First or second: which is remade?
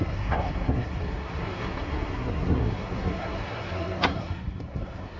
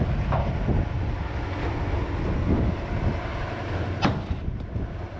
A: first